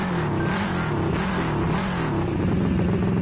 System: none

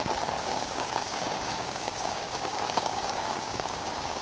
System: codec, DAC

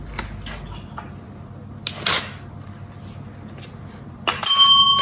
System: none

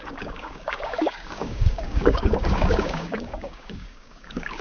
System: codec, DAC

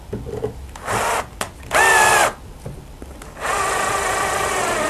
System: none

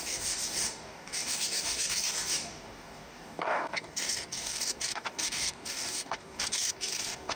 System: codec, DAC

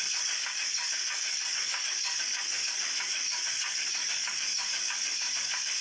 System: codec, DAC